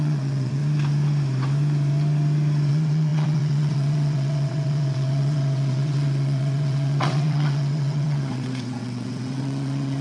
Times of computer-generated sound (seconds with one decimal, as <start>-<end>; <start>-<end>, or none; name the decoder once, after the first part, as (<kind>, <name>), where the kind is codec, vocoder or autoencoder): 0.0-0.6 (vocoder, WaveNeXt); 2.7-10.0